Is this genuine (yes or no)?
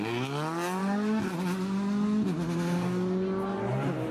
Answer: yes